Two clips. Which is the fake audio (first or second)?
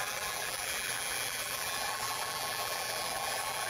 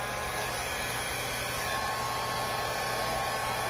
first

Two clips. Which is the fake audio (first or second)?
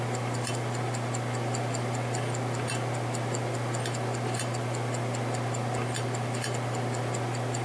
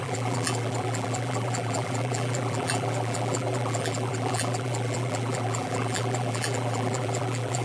second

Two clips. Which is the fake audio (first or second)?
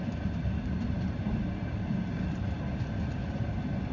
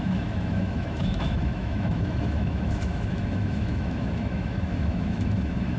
second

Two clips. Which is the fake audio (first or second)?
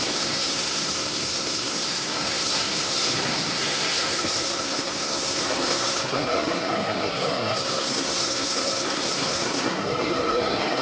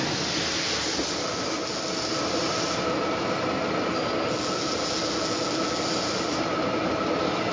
first